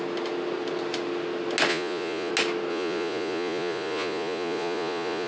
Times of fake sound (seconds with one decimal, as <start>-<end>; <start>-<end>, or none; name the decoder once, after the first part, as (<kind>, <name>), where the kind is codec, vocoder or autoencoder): 1.7-2.3 (vocoder, Vocos); 2.7-5.3